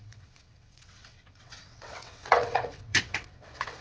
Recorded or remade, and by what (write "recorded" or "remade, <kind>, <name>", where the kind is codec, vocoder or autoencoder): remade, vocoder, WaveNeXt